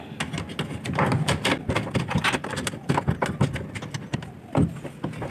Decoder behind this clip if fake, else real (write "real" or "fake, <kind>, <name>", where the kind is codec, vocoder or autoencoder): real